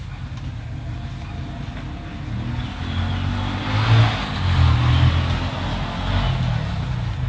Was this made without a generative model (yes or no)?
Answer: yes